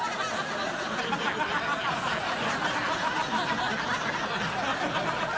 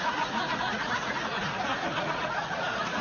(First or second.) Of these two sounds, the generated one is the second